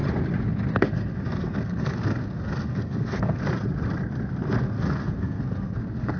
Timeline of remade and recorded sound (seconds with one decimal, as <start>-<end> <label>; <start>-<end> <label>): 0.0-0.7 recorded; 0.7-3.4 remade; 3.4-4.6 recorded; 4.6-6.2 remade